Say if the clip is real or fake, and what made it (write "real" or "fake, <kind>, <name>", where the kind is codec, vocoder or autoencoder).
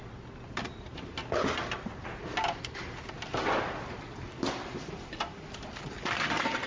real